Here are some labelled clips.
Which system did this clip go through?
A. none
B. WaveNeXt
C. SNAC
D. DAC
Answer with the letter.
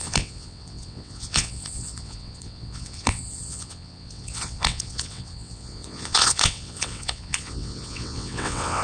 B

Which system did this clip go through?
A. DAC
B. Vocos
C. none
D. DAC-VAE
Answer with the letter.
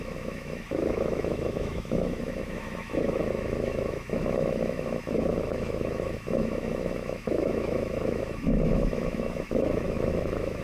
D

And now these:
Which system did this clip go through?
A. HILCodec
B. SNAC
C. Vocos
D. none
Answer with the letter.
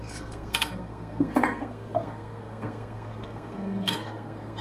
B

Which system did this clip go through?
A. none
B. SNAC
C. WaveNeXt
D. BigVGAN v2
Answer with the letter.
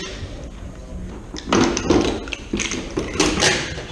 A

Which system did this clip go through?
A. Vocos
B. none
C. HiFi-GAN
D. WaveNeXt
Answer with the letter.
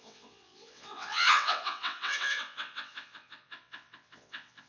D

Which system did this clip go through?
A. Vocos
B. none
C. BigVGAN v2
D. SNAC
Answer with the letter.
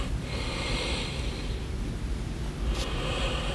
B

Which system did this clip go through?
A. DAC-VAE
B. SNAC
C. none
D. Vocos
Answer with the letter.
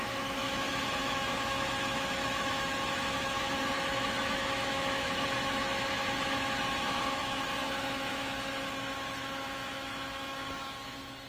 A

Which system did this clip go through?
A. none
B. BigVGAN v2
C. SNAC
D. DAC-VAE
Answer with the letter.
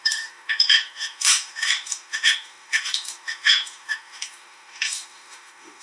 D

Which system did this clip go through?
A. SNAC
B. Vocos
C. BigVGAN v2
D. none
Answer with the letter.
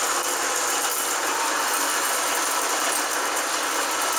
D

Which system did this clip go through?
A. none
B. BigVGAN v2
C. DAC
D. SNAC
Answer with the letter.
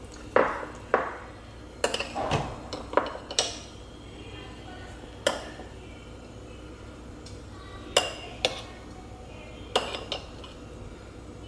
A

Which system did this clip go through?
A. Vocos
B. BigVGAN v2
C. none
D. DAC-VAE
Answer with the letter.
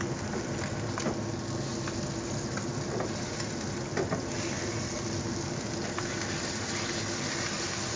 C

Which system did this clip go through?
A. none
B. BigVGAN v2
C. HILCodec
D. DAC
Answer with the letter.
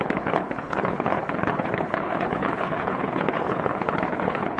C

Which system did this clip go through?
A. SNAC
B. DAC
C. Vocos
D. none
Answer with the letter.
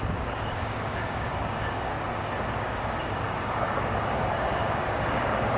B